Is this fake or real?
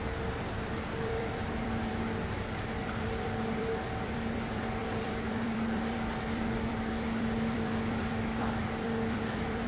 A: fake